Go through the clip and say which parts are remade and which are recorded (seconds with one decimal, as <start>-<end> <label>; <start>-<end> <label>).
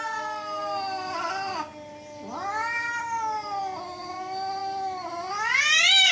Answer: 0.0-6.1 recorded